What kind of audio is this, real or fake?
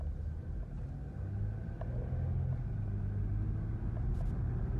real